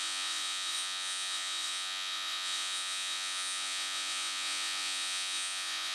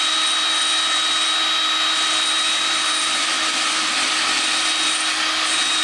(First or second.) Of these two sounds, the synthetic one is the first